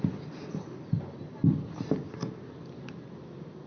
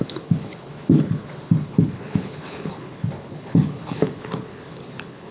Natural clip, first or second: first